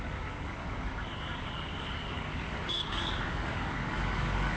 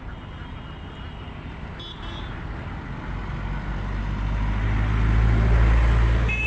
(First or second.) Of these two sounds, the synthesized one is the first